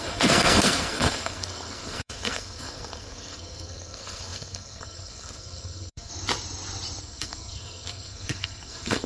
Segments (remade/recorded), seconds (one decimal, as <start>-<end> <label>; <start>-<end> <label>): 0.0-6.1 remade; 6.1-7.0 recorded; 7.0-9.1 remade